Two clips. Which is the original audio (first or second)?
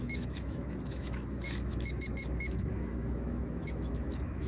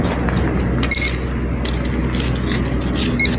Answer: second